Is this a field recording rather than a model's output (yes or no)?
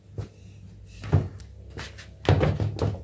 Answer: yes